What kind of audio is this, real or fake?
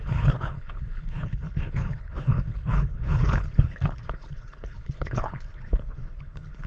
fake